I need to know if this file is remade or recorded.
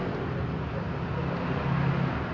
recorded